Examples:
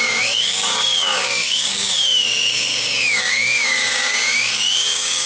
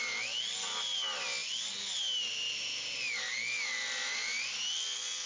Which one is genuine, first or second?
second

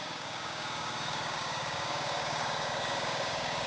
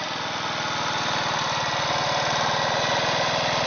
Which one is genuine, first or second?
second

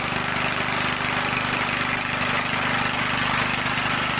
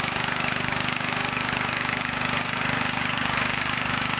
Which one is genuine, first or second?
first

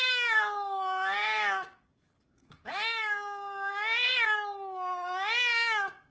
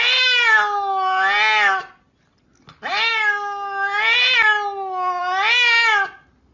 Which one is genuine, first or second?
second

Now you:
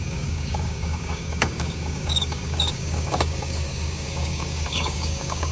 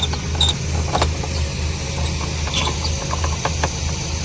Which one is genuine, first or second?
second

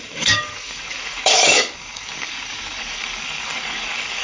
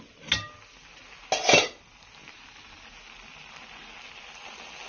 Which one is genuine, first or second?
second